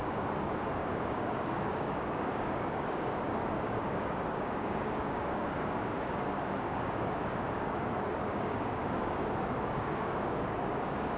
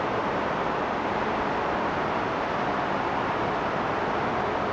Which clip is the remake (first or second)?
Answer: first